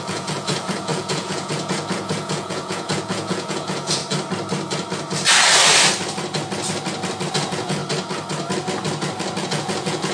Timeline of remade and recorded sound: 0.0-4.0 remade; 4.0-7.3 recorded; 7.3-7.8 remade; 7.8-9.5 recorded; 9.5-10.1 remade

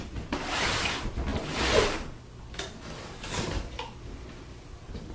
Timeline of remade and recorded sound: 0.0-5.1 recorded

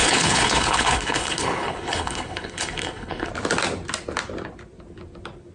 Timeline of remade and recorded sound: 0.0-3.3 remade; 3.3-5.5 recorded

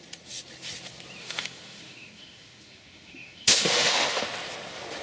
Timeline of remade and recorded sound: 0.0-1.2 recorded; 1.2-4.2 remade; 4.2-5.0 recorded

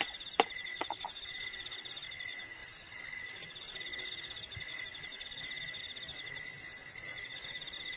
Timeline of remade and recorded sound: 0.0-0.8 recorded; 0.8-1.9 remade; 1.9-2.6 recorded; 2.6-5.8 remade; 5.8-8.0 recorded

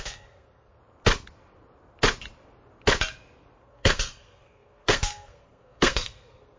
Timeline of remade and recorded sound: 0.0-0.8 remade; 0.8-3.6 recorded; 3.6-6.6 remade

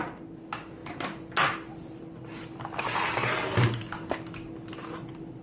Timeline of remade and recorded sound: 0.0-5.4 recorded